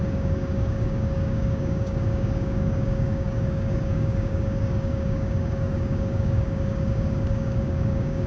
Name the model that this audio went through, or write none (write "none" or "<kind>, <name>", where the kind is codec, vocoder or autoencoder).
codec, DAC